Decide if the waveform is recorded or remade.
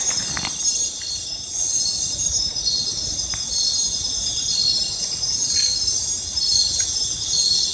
recorded